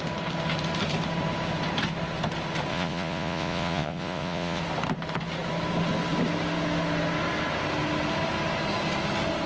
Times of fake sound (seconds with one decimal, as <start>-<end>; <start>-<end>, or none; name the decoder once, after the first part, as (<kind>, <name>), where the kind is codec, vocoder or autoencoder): 2.7-4.6 (vocoder, Vocos)